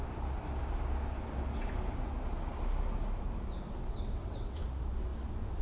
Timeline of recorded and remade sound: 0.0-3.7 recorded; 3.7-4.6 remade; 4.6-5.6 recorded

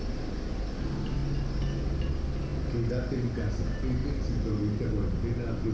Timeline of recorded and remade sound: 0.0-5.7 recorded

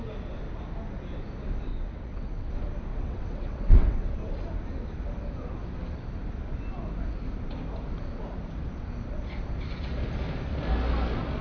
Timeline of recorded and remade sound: 0.0-1.7 recorded; 1.7-2.5 remade; 2.5-2.9 recorded; 2.9-4.1 remade; 4.1-11.4 recorded